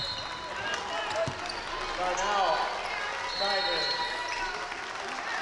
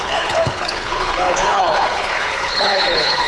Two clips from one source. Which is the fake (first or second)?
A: second